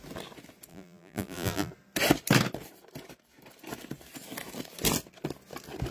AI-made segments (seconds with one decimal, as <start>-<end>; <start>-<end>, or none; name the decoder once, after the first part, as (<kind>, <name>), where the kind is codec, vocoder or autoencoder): 0.7-1.7 (vocoder, BigVGAN v2)